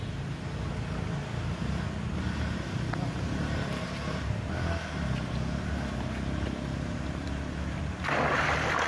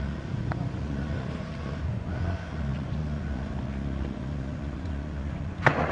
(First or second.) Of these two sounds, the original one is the first